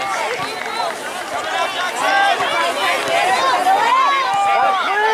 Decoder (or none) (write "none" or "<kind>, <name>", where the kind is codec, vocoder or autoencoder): none